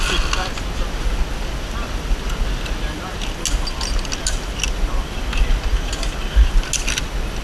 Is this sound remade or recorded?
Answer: recorded